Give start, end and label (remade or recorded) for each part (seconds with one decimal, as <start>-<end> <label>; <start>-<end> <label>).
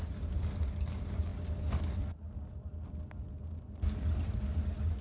0.0-5.0 recorded